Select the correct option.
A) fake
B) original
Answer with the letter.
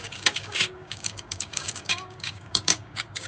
A